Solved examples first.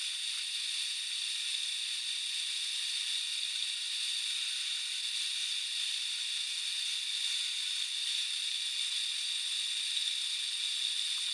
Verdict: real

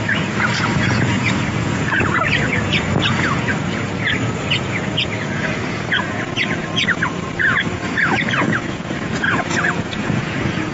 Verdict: fake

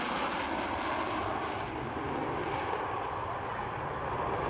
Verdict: real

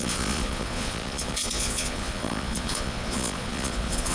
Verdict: fake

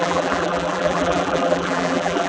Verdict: fake